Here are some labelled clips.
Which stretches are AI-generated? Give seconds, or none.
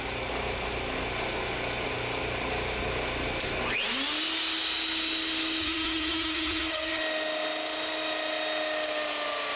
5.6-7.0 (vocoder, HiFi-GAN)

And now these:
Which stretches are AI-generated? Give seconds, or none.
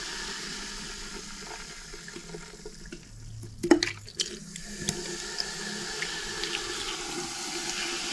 none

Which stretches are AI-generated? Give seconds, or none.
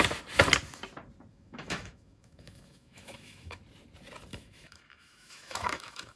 1.3-3.6 (autoencoder, DAC-VAE); 4.3-6.2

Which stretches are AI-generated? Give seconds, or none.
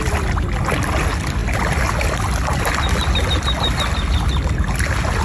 none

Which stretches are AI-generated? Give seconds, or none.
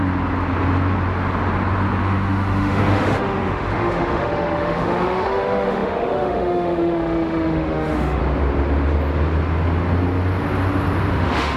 2.0-8.2 (autoencoder, DAC-VAE); 11.1-11.6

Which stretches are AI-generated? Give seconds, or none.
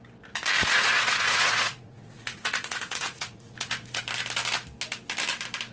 0.6-4.0 (vocoder, Vocos)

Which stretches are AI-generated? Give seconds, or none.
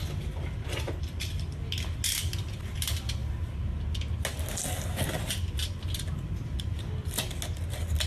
none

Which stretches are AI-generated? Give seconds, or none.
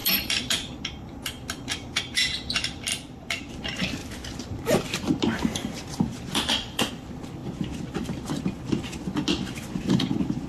0.0-0.8 (vocoder, BigVGAN v2); 2.9-3.5; 4.0-6.9; 7.4-8.4